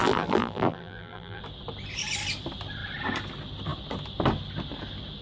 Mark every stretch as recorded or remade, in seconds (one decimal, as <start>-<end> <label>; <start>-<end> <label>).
0.0-1.4 remade; 1.4-5.2 recorded